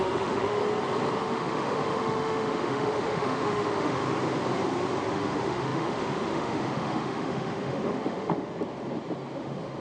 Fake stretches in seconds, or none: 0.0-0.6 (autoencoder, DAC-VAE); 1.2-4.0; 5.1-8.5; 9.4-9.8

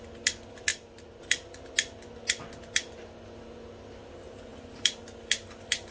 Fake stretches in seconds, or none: 0.7-1.2 (vocoder, BigVGAN v2); 4.5-5.0

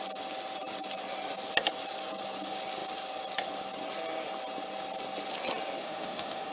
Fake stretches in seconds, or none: 5.8-6.5 (autoencoder, DAC-VAE)

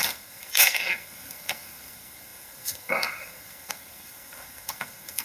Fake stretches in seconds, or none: 0.0-5.2 (codec, SNAC)

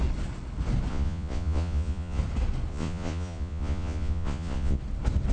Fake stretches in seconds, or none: 0.9-2.2 (vocoder, Vocos); 2.7-4.8

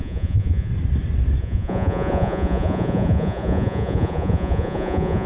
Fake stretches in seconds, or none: 0.0-0.7 (vocoder, Vocos); 1.4-5.3

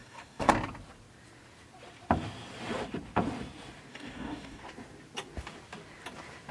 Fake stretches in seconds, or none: 0.0-0.5 (codec, DAC); 3.9-4.6

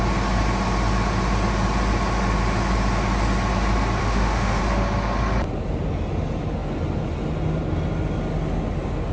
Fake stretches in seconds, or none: 4.0-4.6 (autoencoder, DAC-VAE)